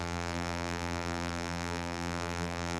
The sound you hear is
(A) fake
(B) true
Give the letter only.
A